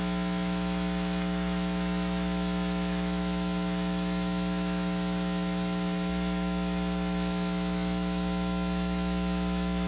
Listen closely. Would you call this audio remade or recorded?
remade